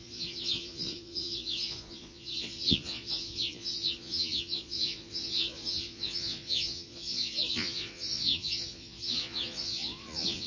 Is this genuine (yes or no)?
no